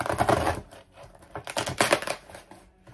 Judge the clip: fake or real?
real